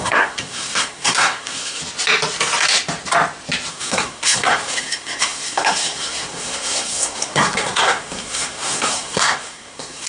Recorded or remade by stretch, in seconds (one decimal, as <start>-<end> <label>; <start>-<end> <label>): 0.0-1.8 remade; 1.8-3.7 recorded; 3.7-10.1 remade